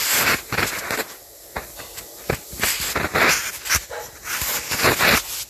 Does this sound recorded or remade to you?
recorded